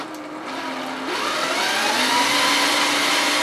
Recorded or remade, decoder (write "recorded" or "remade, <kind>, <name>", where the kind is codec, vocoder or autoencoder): recorded